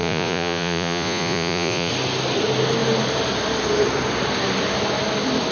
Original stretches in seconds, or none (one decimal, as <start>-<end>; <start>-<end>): 1.9-5.5